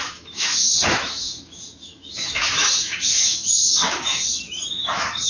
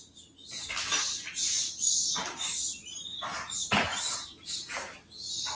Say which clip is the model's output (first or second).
first